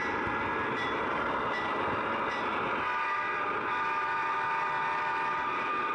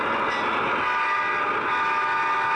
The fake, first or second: first